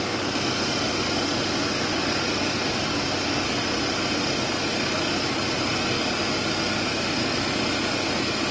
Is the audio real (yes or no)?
yes